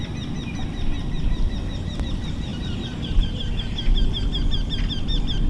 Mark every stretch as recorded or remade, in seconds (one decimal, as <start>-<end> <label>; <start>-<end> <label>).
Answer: 0.0-2.5 recorded; 2.5-3.3 remade; 3.3-5.5 recorded